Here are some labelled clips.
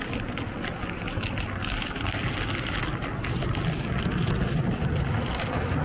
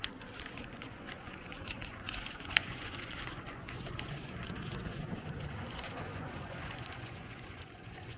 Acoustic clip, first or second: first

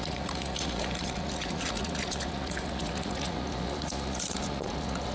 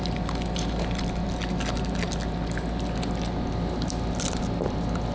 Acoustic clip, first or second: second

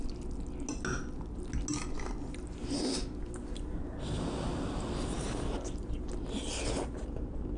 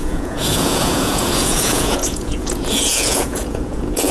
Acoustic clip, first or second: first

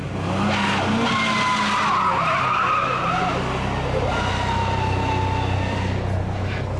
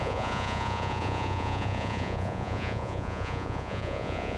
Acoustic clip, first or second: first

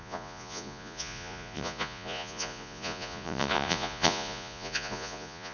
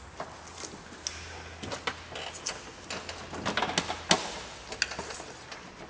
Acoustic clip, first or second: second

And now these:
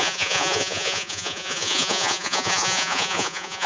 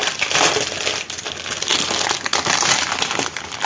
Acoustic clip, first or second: second